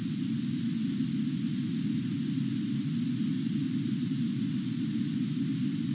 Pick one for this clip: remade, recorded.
recorded